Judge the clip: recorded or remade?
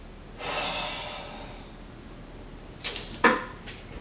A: recorded